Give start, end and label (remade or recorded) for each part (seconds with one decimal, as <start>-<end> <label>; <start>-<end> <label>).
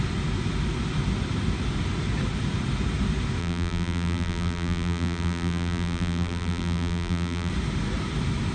0.0-3.4 recorded; 3.4-7.5 remade; 7.5-8.5 recorded